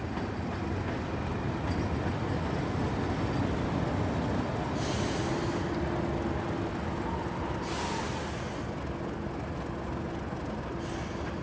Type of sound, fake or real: real